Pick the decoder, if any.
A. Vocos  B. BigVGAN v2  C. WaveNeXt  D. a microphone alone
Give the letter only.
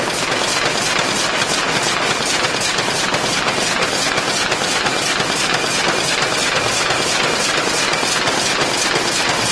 D